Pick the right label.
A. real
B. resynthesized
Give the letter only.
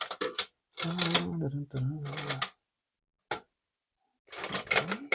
A